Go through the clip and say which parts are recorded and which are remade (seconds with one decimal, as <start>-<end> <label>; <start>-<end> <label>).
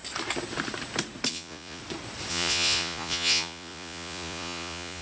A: 0.0-1.3 recorded; 1.3-1.8 remade; 1.8-2.3 recorded; 2.3-5.0 remade